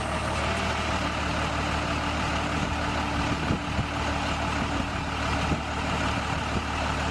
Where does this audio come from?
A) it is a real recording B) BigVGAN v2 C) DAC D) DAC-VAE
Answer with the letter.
A